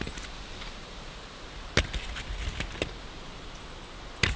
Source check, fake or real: real